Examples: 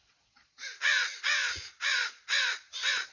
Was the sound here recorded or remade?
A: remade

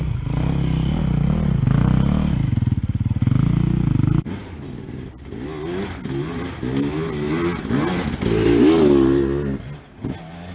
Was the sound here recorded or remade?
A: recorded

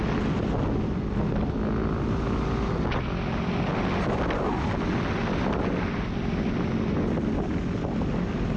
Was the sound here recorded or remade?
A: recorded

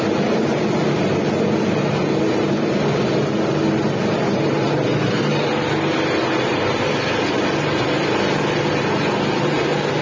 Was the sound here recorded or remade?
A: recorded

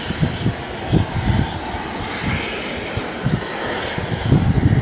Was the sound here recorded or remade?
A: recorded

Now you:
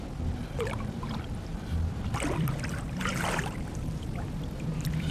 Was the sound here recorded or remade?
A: remade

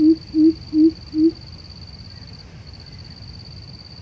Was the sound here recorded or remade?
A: recorded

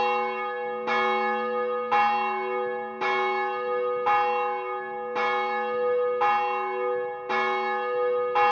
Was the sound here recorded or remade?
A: recorded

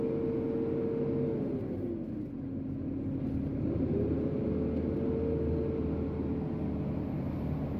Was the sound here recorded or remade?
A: recorded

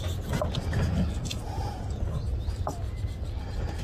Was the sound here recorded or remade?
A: recorded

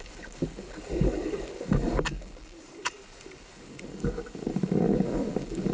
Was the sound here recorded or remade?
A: remade